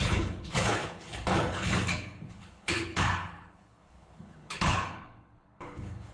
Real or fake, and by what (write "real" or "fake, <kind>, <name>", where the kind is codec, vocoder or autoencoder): fake, codec, HILCodec